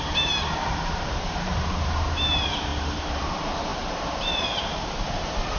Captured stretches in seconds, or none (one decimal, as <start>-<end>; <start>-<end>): 3.7-5.6